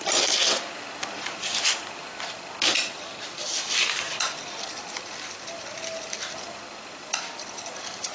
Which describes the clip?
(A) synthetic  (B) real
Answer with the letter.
B